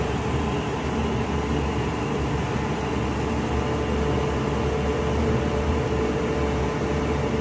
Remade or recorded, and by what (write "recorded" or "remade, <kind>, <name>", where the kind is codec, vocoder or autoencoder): recorded